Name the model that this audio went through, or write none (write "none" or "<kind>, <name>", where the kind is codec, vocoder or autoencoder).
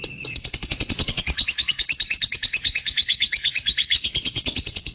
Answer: vocoder, WaveNeXt